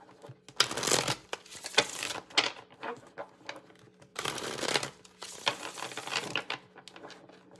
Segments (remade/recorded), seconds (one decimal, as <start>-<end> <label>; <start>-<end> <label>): 0.0-4.1 recorded; 4.1-5.0 remade; 5.0-7.6 recorded